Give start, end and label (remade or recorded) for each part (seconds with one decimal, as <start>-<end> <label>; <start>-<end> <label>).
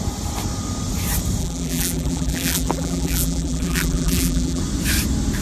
0.0-1.4 recorded; 1.4-4.6 remade; 4.6-5.4 recorded